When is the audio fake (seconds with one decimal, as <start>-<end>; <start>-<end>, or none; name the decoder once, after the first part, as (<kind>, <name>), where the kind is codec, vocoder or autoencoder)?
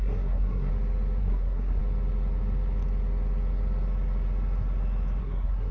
0.0-0.7 (codec, SNAC); 1.2-1.8; 5.2-5.7